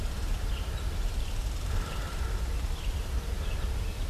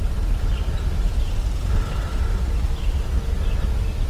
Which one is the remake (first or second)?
first